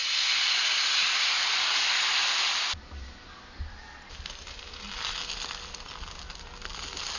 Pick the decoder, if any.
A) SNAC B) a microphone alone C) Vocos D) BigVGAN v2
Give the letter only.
B